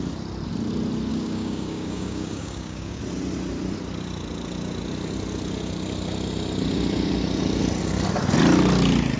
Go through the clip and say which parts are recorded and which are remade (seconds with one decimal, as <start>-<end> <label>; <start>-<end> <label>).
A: 0.0-1.1 recorded; 1.1-3.0 remade; 3.0-9.2 recorded